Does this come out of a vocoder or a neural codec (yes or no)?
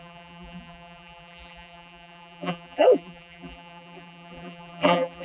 yes